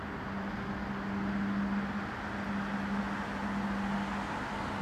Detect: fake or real real